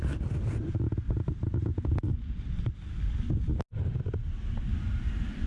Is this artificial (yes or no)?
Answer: no